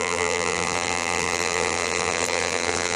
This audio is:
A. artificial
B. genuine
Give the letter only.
A